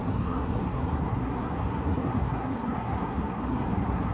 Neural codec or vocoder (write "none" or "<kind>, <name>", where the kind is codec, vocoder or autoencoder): codec, SNAC